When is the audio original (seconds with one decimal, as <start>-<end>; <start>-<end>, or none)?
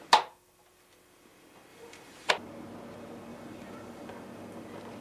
0.0-1.7; 2.3-3.3; 4.1-5.0